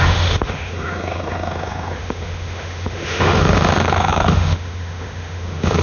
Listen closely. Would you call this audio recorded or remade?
remade